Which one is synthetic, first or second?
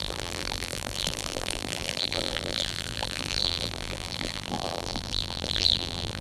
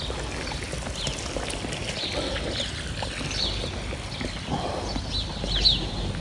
first